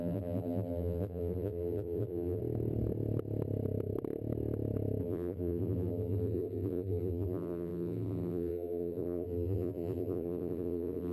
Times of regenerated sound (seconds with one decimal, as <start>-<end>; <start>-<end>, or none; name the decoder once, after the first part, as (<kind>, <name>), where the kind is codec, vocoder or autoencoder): 0.0-2.4 (vocoder, BigVGAN v2); 5.0-11.1